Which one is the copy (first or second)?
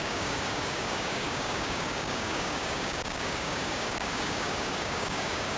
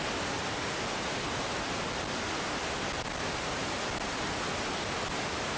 first